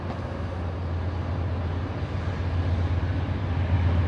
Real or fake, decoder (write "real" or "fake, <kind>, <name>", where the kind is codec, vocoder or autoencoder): real